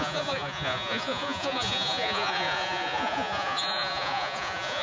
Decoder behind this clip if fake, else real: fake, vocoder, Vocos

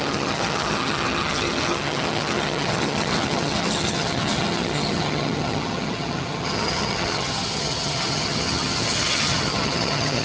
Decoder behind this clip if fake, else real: fake, vocoder, HiFi-GAN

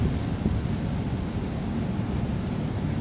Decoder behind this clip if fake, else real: real